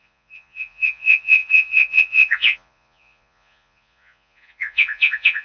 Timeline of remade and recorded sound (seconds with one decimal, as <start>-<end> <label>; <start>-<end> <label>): 0.0-5.4 remade